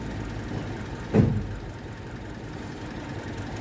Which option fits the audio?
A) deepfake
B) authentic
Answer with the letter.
B